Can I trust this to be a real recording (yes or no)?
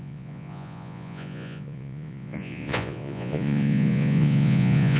no